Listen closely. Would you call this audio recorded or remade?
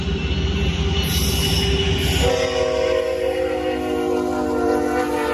recorded